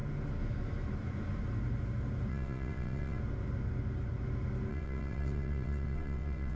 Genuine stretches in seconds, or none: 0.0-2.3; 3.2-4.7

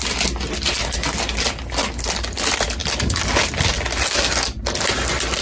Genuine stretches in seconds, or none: 0.0-5.4

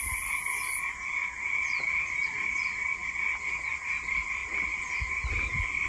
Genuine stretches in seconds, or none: 0.0-5.9

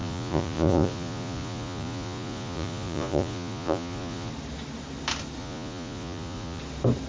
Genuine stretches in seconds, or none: 4.3-5.4; 6.6-7.1

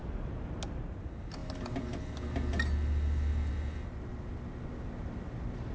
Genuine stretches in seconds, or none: 0.0-5.7

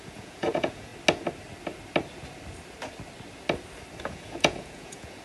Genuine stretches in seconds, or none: 0.9-4.0

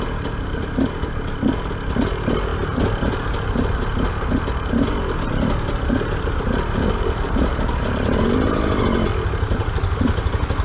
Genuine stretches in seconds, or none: 0.0-10.6